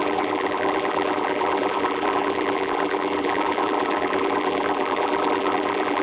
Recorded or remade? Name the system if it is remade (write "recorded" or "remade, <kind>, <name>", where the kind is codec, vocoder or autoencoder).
remade, vocoder, BigVGAN v2